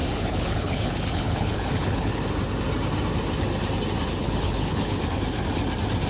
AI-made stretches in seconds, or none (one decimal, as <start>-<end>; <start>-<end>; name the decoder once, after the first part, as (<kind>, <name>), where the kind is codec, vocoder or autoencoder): 0.0-2.1 (codec, HILCodec); 4.2-5.0